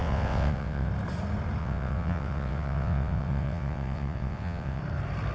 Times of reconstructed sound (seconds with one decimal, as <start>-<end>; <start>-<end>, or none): 0.0-0.9; 1.6-4.8